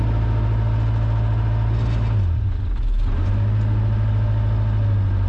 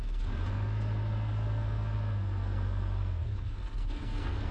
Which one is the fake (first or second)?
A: second